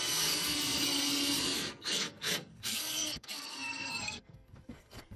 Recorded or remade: remade